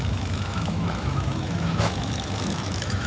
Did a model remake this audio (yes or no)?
yes